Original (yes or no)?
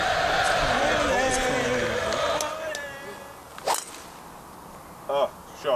yes